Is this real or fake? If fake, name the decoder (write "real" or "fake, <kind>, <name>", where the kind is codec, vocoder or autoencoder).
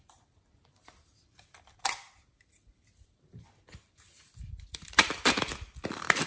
fake, vocoder, BigVGAN v2